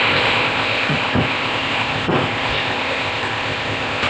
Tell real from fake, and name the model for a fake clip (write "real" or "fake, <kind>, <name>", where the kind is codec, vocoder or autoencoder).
fake, codec, ZipCodec